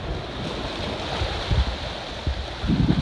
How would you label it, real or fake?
real